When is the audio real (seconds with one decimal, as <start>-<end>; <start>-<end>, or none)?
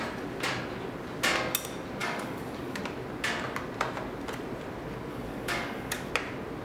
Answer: 0.0-2.0; 2.8-5.1; 6.1-6.6